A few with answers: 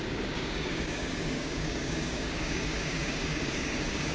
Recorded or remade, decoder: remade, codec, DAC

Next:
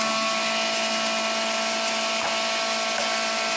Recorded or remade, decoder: recorded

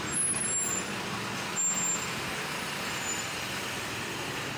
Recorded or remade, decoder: recorded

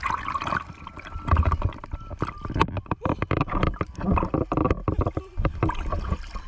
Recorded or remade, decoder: recorded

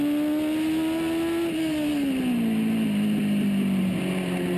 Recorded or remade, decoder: recorded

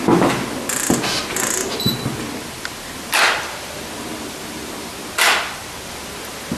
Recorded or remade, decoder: recorded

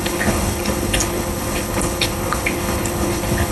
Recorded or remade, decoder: remade, codec, HILCodec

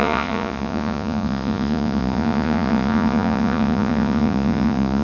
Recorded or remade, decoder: remade, vocoder, Vocos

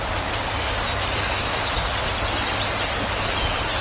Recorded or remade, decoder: recorded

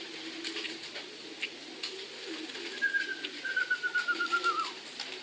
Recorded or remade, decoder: recorded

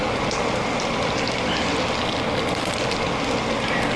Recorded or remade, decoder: recorded